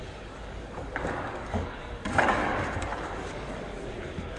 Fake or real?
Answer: fake